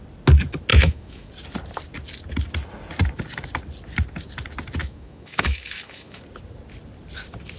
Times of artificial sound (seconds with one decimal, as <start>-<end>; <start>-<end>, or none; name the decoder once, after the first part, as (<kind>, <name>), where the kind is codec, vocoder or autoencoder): 0.7-1.3 (autoencoder, DAC-VAE); 4.8-6.2